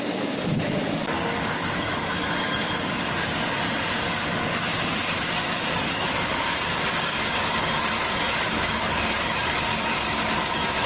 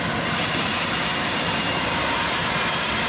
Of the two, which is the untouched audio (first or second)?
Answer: second